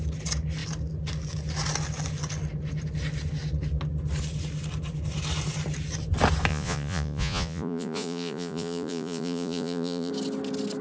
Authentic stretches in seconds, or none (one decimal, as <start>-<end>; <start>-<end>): 0.0-6.5; 10.1-10.8

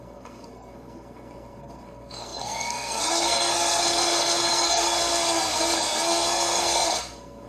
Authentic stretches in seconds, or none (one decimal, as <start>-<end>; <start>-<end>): none

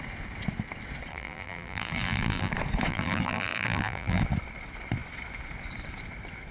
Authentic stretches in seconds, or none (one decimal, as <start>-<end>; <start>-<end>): 0.0-1.1; 2.5-2.9; 4.2-6.5

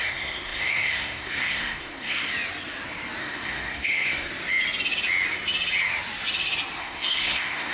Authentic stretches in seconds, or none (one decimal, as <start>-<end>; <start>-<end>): 2.3-3.2; 4.3-6.8

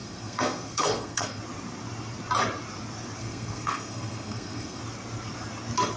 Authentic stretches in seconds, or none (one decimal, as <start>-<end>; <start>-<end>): 1.4-3.2; 4.8-6.0

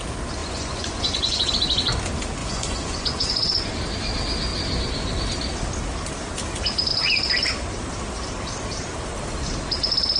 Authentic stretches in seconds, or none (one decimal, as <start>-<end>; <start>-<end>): 0.0-0.4; 1.5-2.4; 3.8-10.2

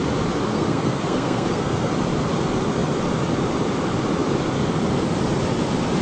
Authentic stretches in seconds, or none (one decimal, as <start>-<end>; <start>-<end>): 0.0-0.5; 1.9-6.0